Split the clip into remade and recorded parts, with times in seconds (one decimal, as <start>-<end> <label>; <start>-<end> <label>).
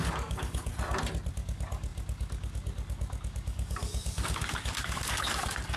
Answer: 0.0-0.7 remade; 0.7-1.3 recorded; 1.3-5.8 remade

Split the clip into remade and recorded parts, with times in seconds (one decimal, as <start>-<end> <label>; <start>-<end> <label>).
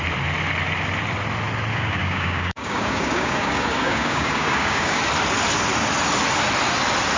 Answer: 0.0-1.7 recorded; 1.7-5.0 remade; 5.0-7.2 recorded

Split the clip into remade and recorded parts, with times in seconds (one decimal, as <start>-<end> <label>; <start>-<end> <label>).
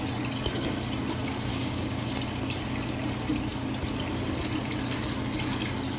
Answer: 0.0-1.5 recorded; 1.5-2.1 remade; 2.1-6.0 recorded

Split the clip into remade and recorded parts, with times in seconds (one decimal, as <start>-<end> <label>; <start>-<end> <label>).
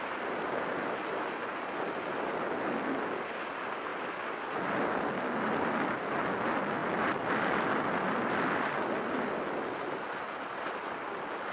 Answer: 0.0-11.5 recorded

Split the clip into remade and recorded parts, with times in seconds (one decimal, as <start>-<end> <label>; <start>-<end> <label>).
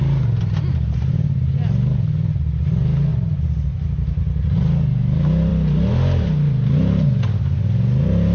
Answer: 0.0-8.3 recorded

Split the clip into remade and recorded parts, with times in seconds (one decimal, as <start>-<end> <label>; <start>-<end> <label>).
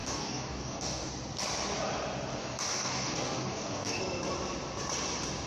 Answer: 0.0-1.1 remade; 1.1-2.4 recorded; 2.4-4.0 remade; 4.0-5.5 recorded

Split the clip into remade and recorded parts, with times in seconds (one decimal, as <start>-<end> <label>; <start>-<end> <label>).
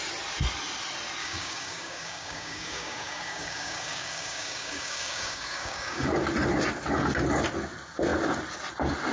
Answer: 0.0-1.2 recorded; 1.2-6.1 remade; 6.1-9.1 recorded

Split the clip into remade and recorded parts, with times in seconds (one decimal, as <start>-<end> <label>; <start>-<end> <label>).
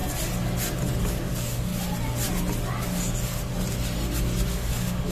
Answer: 0.0-1.0 recorded; 1.0-1.7 remade; 1.7-4.5 recorded; 4.5-5.1 remade